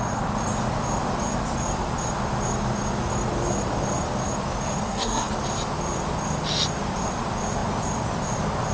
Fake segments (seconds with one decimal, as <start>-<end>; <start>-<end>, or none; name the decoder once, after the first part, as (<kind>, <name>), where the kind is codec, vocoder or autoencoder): 4.8-5.3 (codec, SNAC)